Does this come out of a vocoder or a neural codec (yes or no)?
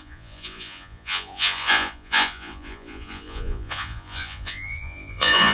yes